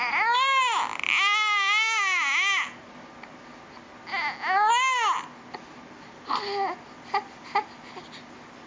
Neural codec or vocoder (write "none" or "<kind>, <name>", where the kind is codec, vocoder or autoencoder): none